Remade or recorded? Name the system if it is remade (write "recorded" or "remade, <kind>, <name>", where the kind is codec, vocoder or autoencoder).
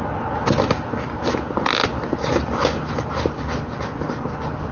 recorded